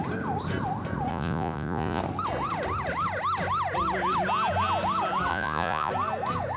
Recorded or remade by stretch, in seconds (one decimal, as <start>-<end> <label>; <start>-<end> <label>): 0.0-1.1 recorded; 1.1-2.0 remade; 2.0-5.3 recorded; 5.3-5.9 remade; 5.9-6.6 recorded